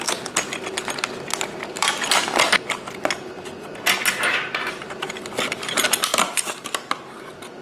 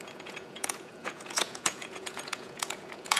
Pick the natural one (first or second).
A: first